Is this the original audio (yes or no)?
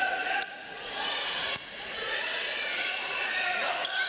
no